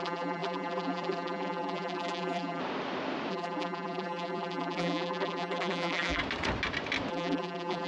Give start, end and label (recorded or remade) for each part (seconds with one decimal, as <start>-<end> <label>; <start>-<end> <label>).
0.0-2.6 remade; 2.6-3.3 recorded; 3.3-6.2 remade; 6.2-7.1 recorded; 7.1-7.9 remade